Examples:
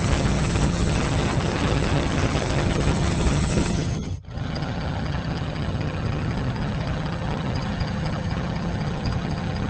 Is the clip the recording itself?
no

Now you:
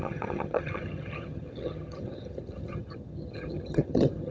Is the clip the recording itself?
no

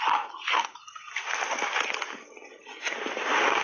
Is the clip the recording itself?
yes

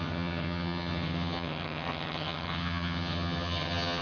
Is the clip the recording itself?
no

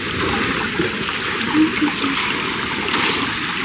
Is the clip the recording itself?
yes